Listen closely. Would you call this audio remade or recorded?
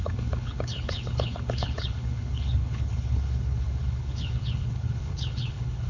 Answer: remade